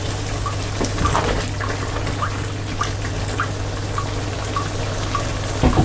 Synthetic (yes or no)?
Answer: no